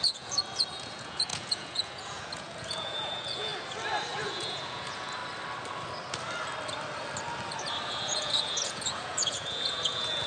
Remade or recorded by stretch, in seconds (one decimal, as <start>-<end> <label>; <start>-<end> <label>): 0.0-3.5 remade; 3.5-4.2 recorded; 4.2-5.2 remade; 5.2-7.9 recorded; 7.9-10.3 remade